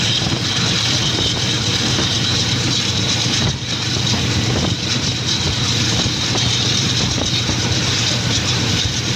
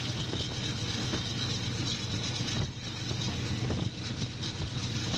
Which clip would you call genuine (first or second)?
second